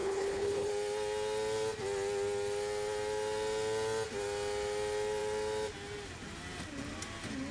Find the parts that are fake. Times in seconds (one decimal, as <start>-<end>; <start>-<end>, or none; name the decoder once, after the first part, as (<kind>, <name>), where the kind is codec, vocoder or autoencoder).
0.0-0.7 (codec, HILCodec)